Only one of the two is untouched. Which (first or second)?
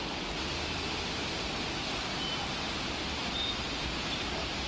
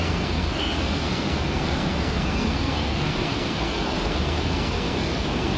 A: first